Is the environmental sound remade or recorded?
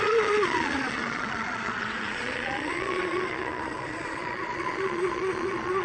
remade